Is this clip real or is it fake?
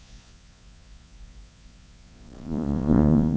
fake